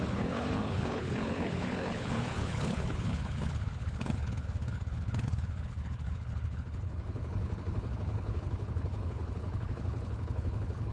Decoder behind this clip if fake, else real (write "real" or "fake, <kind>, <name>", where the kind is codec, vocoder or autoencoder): fake, codec, HILCodec